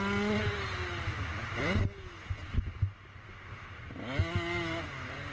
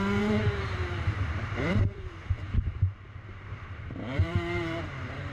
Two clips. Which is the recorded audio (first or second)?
first